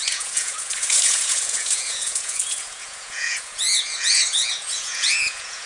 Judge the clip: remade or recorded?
remade